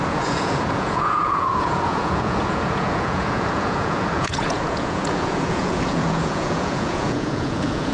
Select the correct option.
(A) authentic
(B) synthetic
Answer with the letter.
B